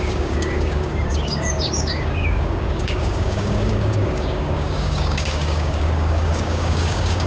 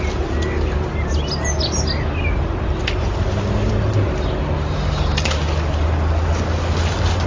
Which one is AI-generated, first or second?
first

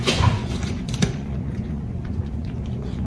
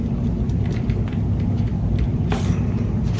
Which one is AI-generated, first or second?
first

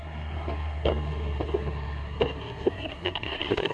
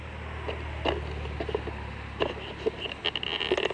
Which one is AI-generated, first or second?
first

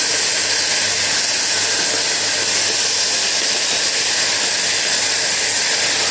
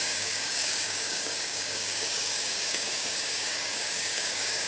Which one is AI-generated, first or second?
second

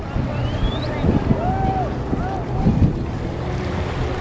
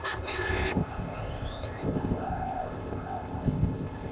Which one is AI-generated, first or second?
second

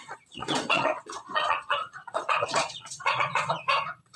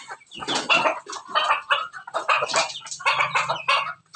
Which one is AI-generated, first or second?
first